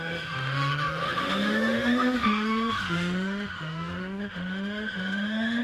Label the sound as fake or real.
fake